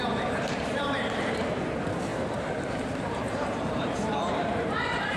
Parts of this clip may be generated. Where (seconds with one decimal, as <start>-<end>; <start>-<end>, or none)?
0.0-5.2